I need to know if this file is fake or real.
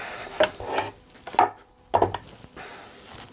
real